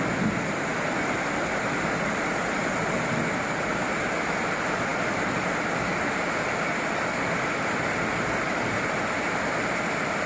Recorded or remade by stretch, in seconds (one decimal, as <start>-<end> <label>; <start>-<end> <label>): 0.0-0.7 remade; 0.7-4.3 recorded; 4.3-10.3 remade